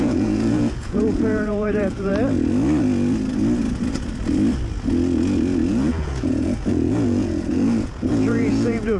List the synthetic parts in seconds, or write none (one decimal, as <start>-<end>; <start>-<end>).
0.0-2.1; 5.7-9.0